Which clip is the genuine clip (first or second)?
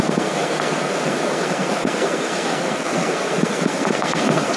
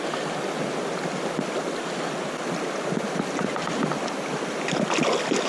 second